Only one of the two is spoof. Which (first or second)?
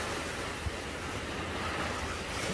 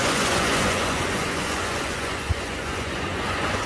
second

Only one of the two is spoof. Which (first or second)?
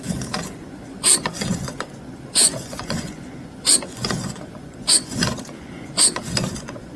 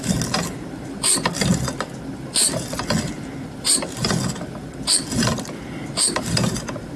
first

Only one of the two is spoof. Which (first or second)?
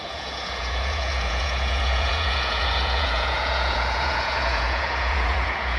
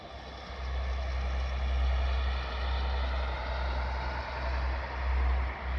first